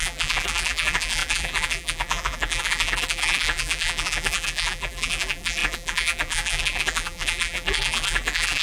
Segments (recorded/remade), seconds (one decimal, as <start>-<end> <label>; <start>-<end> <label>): 0.0-8.6 remade